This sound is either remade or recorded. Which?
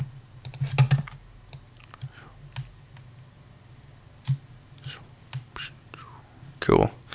recorded